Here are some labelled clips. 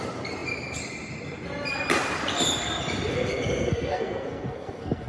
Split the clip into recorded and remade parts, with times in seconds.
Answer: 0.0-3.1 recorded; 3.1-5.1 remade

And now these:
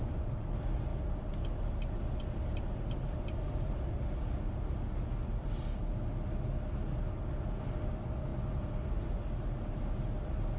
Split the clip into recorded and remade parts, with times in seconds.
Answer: 0.0-10.6 recorded

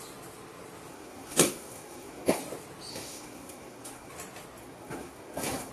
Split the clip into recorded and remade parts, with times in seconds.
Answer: 0.0-0.9 recorded; 0.9-2.4 remade; 2.4-2.9 recorded; 2.9-4.1 remade; 4.1-4.6 recorded; 4.6-5.7 remade

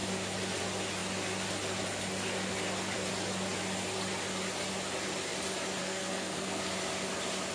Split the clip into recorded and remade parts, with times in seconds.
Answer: 0.0-5.8 recorded; 5.8-6.6 remade; 6.6-7.5 recorded

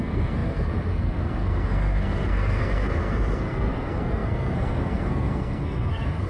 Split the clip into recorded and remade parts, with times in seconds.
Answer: 0.0-6.3 remade

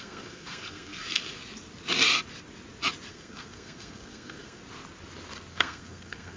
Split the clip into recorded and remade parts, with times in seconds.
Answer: 0.0-1.4 remade; 1.4-3.1 recorded; 3.1-4.6 remade; 4.6-5.5 recorded; 5.5-6.4 remade

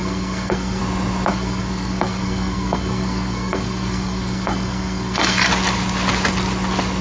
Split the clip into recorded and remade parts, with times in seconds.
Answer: 0.0-0.8 remade; 0.8-1.3 recorded; 1.3-5.5 remade; 5.5-7.0 recorded

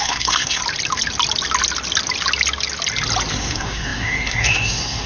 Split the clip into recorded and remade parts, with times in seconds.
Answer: 0.0-0.6 remade; 0.6-3.3 recorded; 3.3-5.1 remade